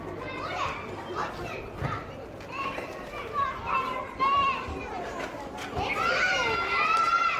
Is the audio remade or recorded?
recorded